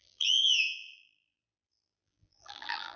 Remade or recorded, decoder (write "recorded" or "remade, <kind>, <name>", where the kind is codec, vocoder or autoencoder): remade, vocoder, BigVGAN v2